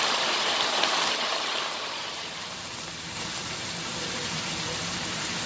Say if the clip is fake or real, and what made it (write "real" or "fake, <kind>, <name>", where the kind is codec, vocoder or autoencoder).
fake, vocoder, BigVGAN v2